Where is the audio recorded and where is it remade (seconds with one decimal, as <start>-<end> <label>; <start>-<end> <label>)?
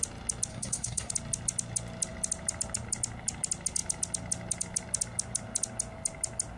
0.0-0.5 recorded; 0.5-1.1 remade; 1.1-6.6 recorded